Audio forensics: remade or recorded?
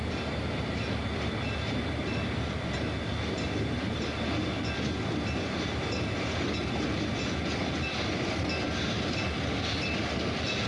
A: recorded